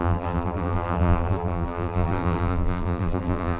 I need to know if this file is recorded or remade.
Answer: remade